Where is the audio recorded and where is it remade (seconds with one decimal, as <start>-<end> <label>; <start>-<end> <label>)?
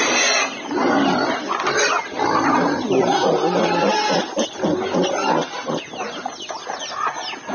0.0-7.5 recorded